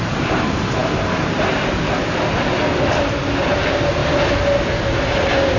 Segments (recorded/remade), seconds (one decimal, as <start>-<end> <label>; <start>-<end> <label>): 0.0-5.6 recorded